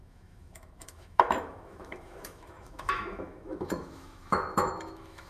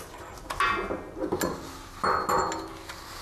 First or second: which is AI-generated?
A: first